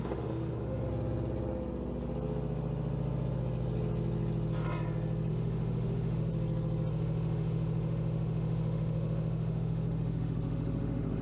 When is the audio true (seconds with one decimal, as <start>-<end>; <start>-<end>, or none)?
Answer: 0.9-5.3; 6.3-6.9